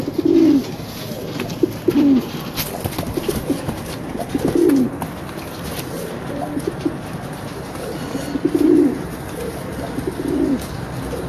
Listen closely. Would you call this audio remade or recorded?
recorded